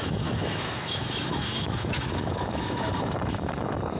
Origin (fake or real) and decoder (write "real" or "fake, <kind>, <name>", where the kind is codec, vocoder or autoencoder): fake, autoencoder, DAC-VAE